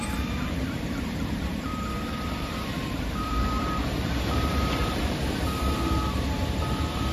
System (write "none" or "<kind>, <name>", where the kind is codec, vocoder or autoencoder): vocoder, BigVGAN v2